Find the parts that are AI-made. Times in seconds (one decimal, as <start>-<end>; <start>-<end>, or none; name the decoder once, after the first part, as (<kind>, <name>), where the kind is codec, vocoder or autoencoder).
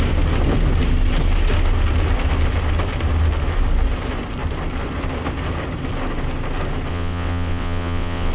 6.9-8.3 (vocoder, WaveNeXt)